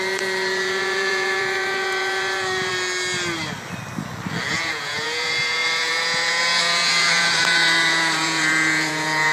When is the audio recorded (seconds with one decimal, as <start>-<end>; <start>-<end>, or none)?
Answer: 2.7-4.5